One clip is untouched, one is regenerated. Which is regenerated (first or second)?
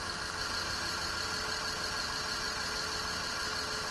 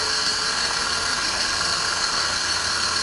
second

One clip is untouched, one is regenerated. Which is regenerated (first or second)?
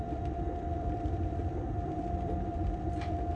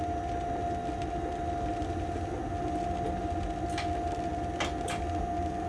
first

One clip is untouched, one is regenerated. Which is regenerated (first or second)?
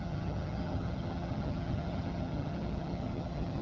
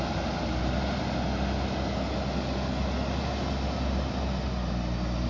first